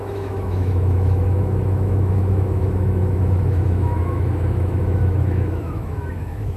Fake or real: fake